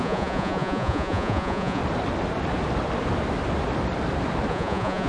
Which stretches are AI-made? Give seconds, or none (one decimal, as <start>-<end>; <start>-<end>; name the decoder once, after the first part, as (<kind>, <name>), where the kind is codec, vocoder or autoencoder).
0.0-1.8 (vocoder, Vocos); 4.5-5.1